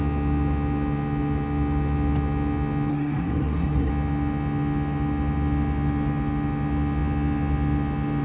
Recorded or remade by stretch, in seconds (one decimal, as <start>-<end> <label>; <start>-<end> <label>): 0.0-2.9 recorded; 2.9-3.9 remade; 3.9-8.2 recorded